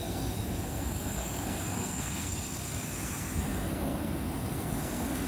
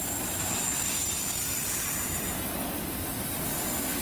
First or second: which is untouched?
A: second